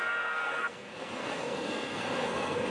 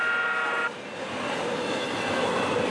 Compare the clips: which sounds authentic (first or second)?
second